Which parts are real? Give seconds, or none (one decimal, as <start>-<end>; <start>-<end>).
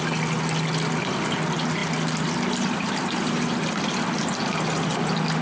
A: 0.0-1.8; 3.8-5.4